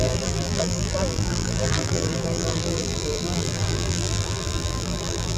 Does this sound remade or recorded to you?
remade